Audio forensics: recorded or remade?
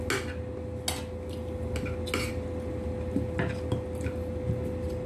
recorded